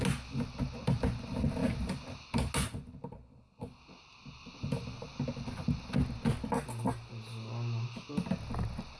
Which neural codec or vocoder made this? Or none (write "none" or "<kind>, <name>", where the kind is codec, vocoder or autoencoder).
none